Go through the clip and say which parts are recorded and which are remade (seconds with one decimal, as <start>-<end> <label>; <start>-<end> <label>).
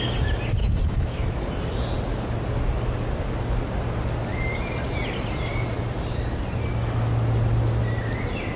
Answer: 0.0-0.6 recorded; 0.6-1.4 remade; 1.4-8.6 recorded